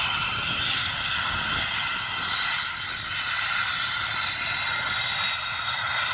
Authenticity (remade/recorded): recorded